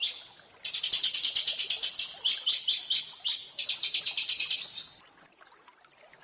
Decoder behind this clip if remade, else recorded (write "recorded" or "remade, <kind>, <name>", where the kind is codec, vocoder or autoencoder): recorded